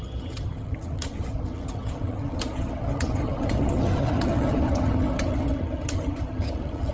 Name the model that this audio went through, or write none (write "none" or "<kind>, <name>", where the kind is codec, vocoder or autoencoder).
vocoder, HiFi-GAN